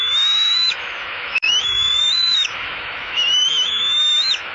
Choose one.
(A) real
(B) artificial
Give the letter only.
B